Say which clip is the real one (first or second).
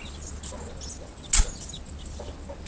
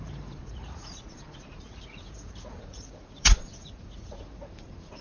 first